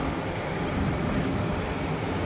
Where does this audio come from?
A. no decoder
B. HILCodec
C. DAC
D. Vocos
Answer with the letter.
A